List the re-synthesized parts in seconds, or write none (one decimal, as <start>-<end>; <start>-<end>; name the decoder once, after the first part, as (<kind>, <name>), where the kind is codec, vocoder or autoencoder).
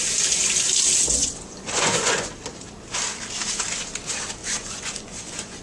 1.2-2.3 (vocoder, Vocos); 4.4-5.6